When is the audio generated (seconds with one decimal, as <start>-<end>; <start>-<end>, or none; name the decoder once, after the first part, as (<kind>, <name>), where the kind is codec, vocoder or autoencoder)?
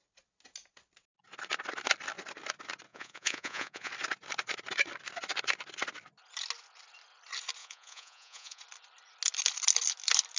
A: 2.9-3.9 (vocoder, Vocos); 7.6-8.6